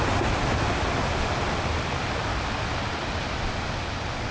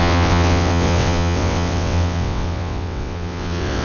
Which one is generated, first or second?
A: second